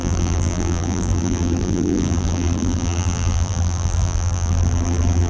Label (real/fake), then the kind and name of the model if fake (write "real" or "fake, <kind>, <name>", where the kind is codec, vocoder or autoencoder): fake, vocoder, BigVGAN v2